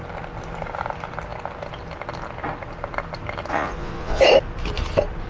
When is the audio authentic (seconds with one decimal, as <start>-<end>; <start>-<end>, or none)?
0.0-3.5; 4.2-5.3